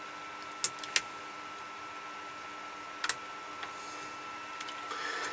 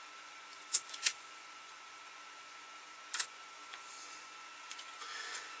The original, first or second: first